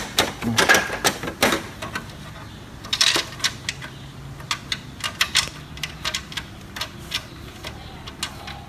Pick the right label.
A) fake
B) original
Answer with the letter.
B